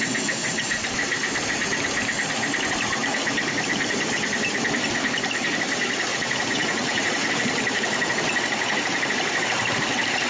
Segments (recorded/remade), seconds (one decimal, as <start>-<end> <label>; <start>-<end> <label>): 0.0-6.1 recorded; 6.1-7.3 remade; 7.3-10.3 recorded